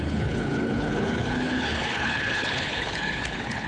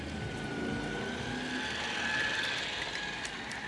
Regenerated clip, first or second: first